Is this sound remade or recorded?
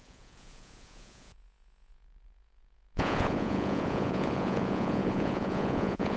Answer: remade